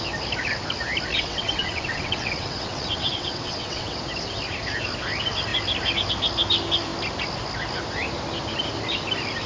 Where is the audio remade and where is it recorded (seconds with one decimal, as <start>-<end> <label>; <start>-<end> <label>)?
0.0-1.1 recorded; 1.1-4.0 remade; 4.0-9.5 recorded